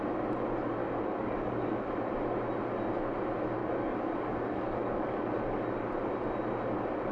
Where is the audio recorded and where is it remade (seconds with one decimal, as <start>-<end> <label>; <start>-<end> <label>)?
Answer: 0.0-0.8 recorded; 0.8-1.9 remade; 1.9-3.6 recorded; 3.6-5.3 remade; 5.3-7.1 recorded